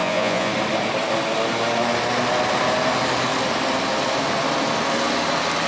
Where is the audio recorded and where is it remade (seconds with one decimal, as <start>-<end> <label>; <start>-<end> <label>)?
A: 0.0-0.5 remade; 0.5-5.7 recorded